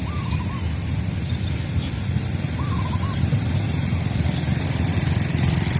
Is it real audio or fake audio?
fake